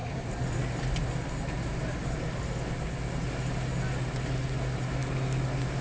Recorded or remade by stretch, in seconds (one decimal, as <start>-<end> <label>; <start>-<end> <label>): 0.0-5.8 recorded